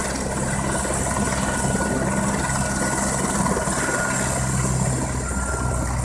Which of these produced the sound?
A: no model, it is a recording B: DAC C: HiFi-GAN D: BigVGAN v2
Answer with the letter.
A